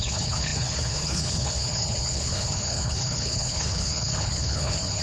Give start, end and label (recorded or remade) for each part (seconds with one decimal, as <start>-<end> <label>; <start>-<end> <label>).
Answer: 0.0-5.0 remade